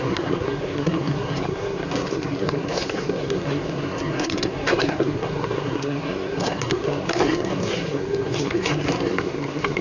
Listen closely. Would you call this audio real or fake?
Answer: fake